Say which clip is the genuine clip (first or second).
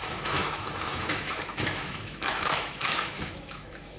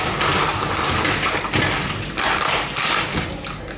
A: second